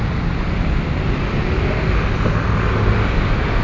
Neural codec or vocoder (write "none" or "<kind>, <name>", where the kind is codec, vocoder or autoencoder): none